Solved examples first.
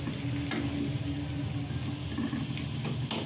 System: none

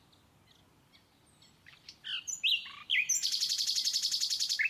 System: none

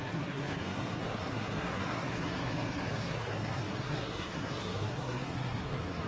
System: codec, SNAC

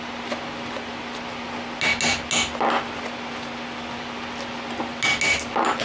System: none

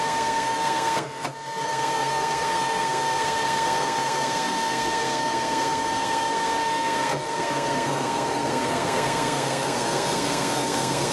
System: codec, SNAC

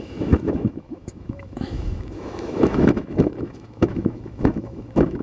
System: autoencoder, DAC-VAE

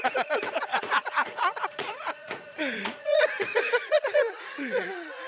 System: vocoder, Vocos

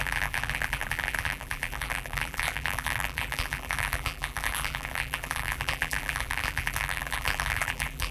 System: vocoder, BigVGAN v2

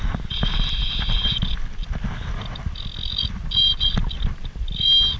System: none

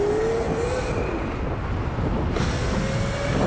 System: none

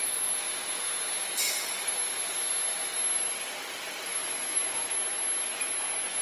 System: none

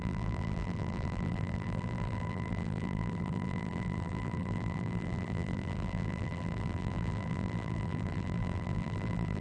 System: vocoder, BigVGAN v2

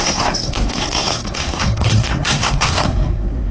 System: codec, SNAC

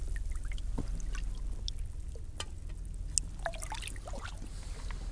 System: none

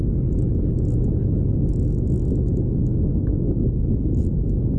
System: none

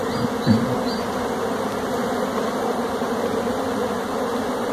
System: none